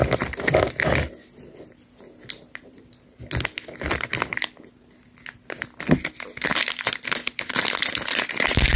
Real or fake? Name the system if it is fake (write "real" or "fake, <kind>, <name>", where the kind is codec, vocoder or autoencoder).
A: real